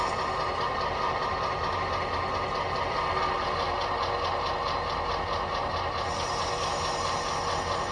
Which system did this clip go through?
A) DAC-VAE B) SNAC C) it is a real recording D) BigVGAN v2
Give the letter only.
C